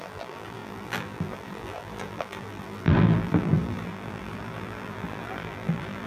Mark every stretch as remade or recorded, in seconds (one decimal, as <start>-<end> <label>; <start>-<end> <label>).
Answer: 0.0-6.1 remade